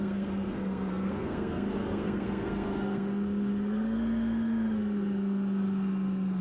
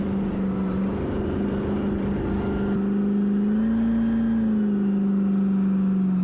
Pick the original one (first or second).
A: second